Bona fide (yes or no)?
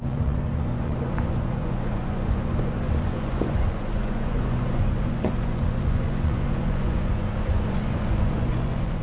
no